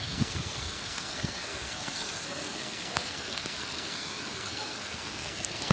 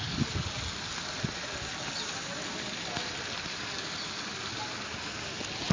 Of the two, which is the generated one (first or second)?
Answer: first